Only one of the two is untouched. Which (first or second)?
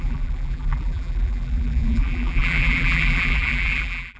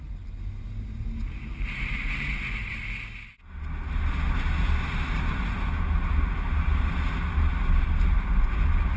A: second